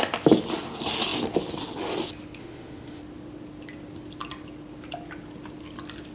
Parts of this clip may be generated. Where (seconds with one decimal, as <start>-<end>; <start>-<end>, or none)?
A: 2.4-3.0